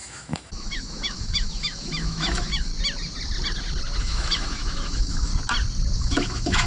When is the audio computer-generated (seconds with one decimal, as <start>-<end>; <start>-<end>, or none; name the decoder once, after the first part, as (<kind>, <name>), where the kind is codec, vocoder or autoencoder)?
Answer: 0.0-2.7 (autoencoder, DAC-VAE); 4.0-5.3; 6.0-6.7